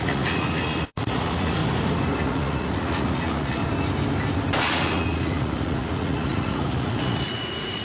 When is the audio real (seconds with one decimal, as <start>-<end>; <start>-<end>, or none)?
1.6-2.2; 3.6-4.6